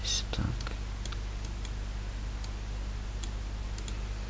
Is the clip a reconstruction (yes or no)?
no